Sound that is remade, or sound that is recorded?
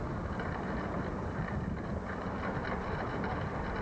recorded